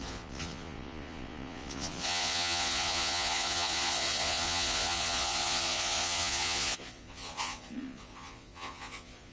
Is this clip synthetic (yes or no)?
yes